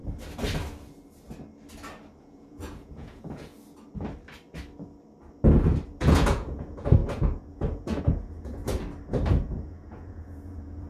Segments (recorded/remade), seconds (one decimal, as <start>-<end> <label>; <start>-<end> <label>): 0.0-2.2 recorded; 2.2-3.5 remade; 3.5-6.0 recorded; 6.0-8.6 remade; 8.6-9.3 recorded; 9.3-10.9 remade